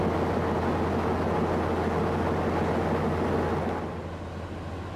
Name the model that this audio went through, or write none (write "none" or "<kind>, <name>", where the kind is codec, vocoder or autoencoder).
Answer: none